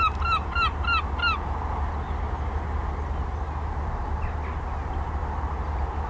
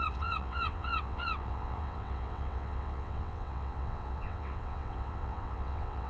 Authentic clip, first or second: first